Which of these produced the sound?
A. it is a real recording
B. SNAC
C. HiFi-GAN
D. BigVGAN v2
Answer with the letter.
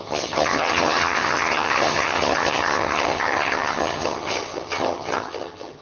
C